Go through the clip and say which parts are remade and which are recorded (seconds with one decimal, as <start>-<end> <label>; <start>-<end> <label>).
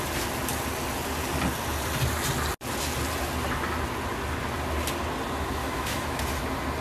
0.0-5.6 recorded; 5.6-6.2 remade; 6.2-6.8 recorded